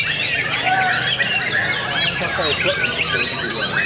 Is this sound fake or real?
real